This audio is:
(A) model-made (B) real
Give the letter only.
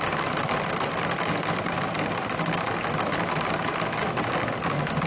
B